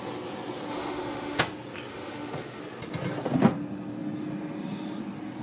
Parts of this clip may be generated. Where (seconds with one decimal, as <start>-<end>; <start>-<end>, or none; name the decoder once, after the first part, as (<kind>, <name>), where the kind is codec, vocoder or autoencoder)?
0.7-1.4 (autoencoder, DAC-VAE); 1.9-2.6